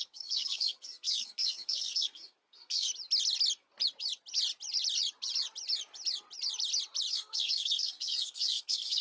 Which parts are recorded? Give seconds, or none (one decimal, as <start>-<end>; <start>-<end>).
2.9-7.1